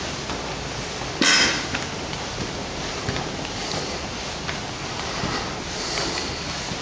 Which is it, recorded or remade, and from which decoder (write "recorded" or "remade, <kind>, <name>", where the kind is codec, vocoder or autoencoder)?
recorded